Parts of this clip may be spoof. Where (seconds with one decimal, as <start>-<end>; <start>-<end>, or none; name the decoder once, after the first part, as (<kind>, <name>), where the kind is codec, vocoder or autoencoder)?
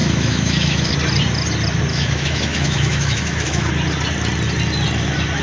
0.0-0.9 (autoencoder, DAC-VAE); 1.9-3.7